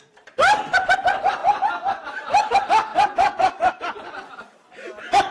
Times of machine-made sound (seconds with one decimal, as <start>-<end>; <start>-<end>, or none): 1.4-2.4; 2.9-4.3